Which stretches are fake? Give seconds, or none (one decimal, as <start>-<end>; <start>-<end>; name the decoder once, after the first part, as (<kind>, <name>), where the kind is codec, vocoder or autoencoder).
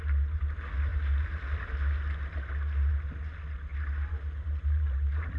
none